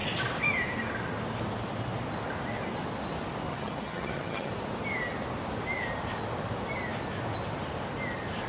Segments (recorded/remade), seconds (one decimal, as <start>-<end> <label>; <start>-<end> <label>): 0.0-3.5 recorded; 3.5-4.5 remade; 4.5-8.5 recorded